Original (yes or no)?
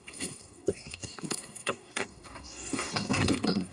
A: no